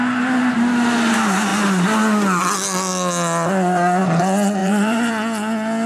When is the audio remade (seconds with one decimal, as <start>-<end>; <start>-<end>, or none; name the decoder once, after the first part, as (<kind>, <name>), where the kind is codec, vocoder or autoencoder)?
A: 4.6-5.1 (vocoder, BigVGAN v2)